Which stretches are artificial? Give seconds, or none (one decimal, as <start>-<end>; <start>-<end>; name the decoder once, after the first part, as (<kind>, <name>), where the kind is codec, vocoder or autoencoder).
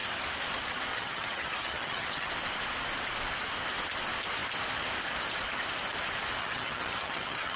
0.9-2.3 (vocoder, HiFi-GAN); 6.4-7.6